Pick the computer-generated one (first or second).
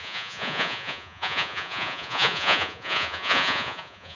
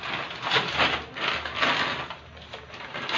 first